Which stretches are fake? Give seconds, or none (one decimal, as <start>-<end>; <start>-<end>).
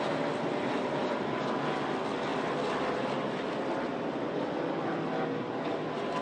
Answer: 2.3-4.7